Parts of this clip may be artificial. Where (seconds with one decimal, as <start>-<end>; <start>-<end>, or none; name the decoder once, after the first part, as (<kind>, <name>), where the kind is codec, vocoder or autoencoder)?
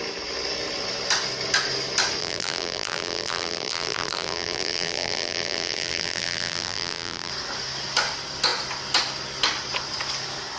2.2-7.3 (vocoder, BigVGAN v2)